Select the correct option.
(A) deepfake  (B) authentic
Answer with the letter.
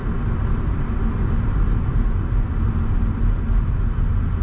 B